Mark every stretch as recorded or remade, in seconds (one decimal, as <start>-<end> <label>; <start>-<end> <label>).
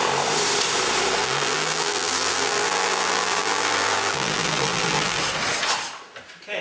0.0-1.2 recorded; 1.2-5.2 remade; 5.2-6.6 recorded